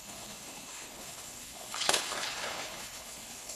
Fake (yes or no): yes